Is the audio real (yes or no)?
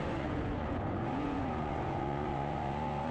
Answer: no